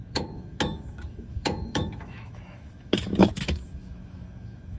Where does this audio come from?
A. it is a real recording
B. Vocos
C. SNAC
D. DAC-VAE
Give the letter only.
D